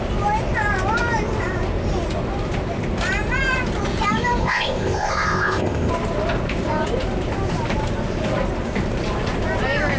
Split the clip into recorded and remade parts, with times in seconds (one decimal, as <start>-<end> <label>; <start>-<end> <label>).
0.0-4.4 recorded; 4.4-5.9 remade; 5.9-10.0 recorded